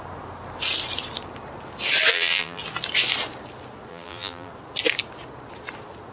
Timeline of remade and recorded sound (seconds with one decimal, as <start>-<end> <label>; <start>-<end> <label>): 0.0-2.1 recorded; 2.1-2.6 remade; 2.6-3.9 recorded; 3.9-4.5 remade; 4.5-6.1 recorded